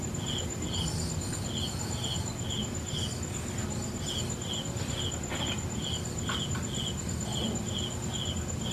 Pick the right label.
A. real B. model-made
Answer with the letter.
A